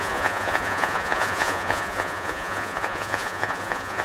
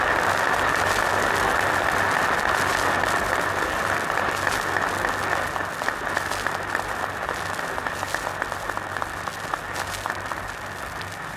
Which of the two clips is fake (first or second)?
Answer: first